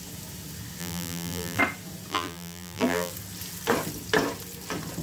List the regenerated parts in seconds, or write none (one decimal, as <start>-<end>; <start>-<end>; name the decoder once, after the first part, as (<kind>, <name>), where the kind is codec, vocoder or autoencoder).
0.8-1.6 (vocoder, BigVGAN v2); 2.1-3.1